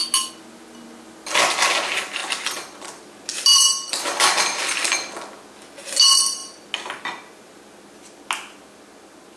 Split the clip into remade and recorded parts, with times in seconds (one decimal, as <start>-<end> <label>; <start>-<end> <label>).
0.0-2.2 recorded; 2.2-3.1 remade; 3.1-9.4 recorded